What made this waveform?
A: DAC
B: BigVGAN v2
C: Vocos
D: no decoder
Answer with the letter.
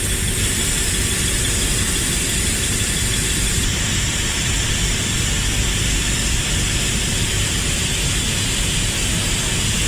B